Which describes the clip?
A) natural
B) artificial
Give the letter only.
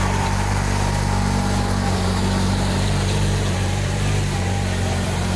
B